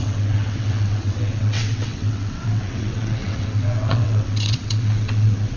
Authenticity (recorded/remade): remade